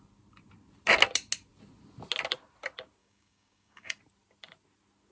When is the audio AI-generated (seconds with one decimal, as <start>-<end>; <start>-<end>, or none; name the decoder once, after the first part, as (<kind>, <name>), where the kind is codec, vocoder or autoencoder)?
3.0-4.0 (codec, DAC)

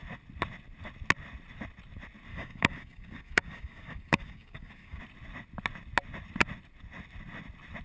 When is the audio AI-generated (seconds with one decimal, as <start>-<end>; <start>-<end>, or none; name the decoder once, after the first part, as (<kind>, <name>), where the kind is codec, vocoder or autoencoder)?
2.3-5.0 (codec, DAC)

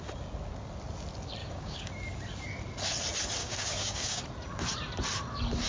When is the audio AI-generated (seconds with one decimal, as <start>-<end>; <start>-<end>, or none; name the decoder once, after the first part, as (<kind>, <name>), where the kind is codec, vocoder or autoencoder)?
1.4-1.9 (codec, DAC); 3.4-4.2

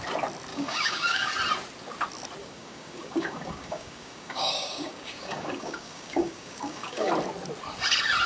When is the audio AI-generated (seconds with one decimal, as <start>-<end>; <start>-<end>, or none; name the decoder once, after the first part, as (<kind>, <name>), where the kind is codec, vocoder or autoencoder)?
0.5-1.3 (codec, DAC); 2.4-7.1

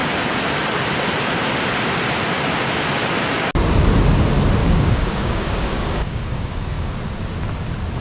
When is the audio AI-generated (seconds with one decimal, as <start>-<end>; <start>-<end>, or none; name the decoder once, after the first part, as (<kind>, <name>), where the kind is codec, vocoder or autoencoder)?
4.6-6.9 (codec, DAC)

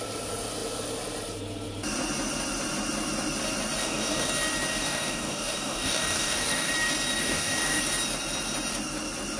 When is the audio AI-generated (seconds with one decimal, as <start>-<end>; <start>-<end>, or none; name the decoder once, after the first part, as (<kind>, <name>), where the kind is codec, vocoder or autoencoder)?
3.8-4.3 (codec, DAC); 4.7-6.7; 7.2-7.8